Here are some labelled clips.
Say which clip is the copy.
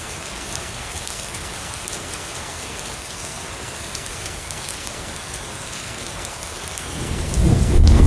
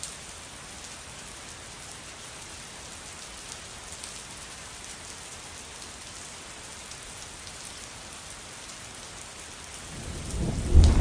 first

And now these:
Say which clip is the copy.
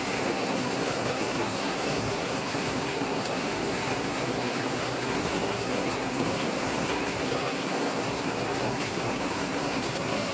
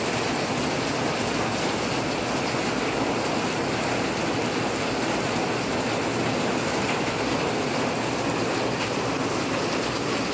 first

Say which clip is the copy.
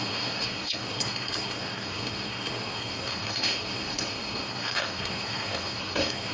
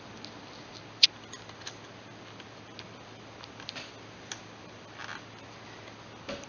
first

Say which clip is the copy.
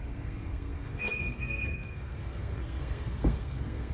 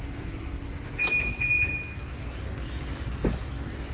first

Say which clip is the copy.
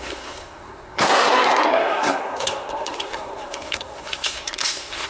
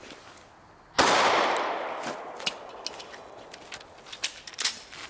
first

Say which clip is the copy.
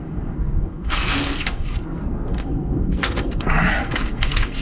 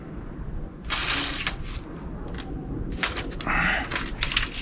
first